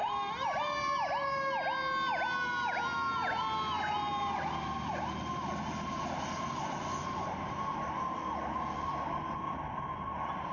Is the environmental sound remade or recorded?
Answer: recorded